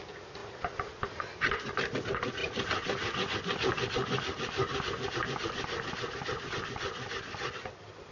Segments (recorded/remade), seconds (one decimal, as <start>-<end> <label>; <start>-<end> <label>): 0.0-8.1 recorded